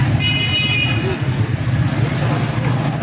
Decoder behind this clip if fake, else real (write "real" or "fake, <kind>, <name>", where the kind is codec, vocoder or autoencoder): real